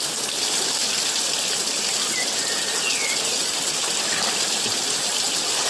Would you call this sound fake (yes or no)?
no